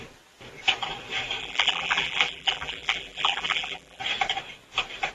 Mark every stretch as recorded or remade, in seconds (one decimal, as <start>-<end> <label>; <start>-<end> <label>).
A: 0.0-1.4 recorded; 1.4-4.0 remade; 4.0-5.1 recorded